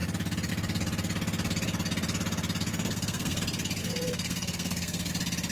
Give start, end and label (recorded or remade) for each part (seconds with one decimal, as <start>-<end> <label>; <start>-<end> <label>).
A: 0.0-2.7 recorded; 2.7-3.4 remade; 3.4-3.8 recorded; 3.8-5.1 remade; 5.1-5.5 recorded